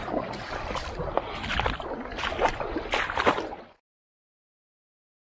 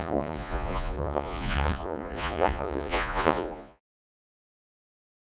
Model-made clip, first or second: second